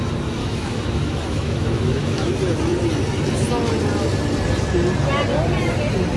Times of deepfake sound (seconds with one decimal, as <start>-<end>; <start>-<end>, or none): 0.4-2.3